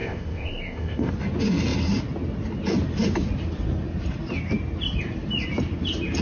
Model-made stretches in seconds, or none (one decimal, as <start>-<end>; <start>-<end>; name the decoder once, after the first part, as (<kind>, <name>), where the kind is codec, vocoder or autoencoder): 0.0-1.1 (codec, ZipCodec)